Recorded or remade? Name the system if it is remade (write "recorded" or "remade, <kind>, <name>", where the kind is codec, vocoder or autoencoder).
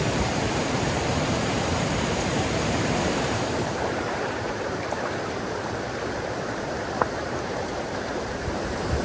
remade, vocoder, BigVGAN v2